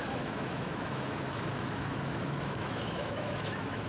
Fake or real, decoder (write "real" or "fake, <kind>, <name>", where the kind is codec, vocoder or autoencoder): fake, autoencoder, DAC-VAE